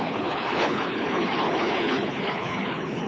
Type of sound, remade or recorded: remade